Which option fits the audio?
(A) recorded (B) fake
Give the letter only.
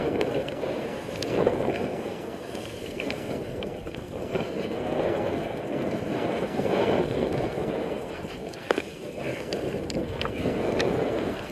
B